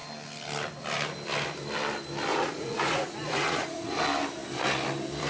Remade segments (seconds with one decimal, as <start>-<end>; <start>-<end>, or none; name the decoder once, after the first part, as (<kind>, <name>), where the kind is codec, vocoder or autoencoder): 2.3-4.0 (vocoder, Vocos)